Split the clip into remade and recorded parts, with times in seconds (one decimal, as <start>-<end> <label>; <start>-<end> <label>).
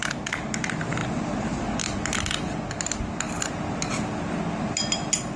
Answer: 0.0-5.4 recorded